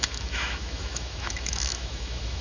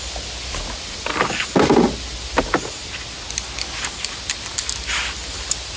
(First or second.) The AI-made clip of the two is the first